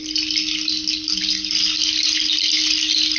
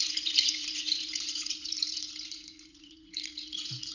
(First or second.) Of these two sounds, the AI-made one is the second